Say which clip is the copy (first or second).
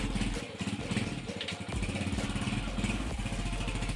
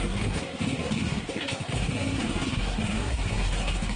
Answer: second